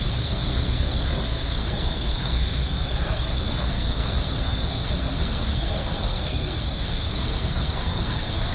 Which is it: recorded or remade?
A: remade